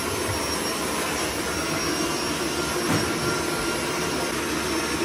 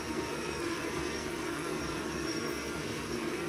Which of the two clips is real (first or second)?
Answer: first